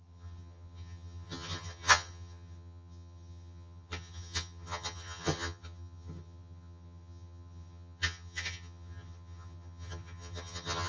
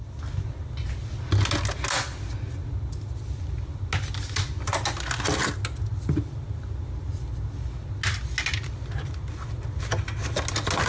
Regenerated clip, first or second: first